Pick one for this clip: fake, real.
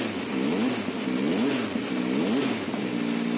real